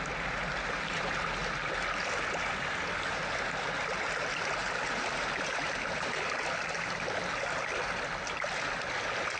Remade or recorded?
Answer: recorded